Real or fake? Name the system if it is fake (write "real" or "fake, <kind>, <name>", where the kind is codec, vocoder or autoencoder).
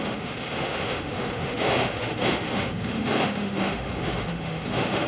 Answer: fake, autoencoder, DAC-VAE